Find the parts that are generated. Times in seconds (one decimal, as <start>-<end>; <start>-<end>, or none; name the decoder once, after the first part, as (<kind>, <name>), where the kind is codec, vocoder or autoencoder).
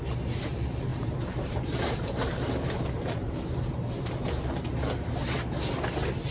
0.9-4.7 (vocoder, BigVGAN v2)